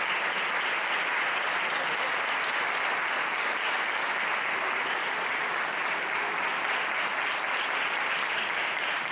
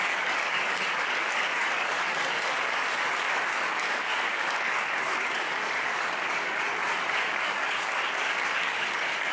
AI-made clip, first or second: second